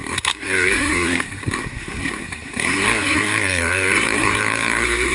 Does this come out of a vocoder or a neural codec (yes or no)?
yes